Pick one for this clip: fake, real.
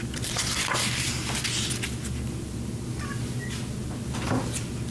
real